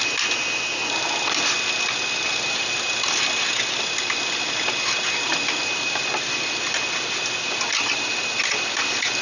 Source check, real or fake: real